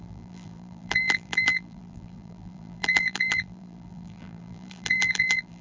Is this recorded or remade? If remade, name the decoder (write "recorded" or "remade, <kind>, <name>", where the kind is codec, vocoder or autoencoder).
remade, vocoder, BigVGAN v2